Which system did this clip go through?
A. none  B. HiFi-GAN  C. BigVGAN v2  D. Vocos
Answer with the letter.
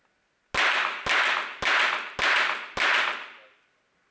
A